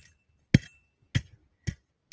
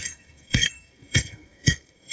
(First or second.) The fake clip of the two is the second